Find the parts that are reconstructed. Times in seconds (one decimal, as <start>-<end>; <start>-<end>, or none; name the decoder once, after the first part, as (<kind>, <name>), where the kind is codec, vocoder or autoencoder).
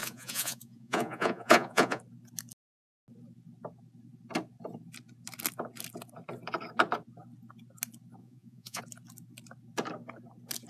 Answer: 0.0-2.0 (vocoder, Vocos); 8.2-8.8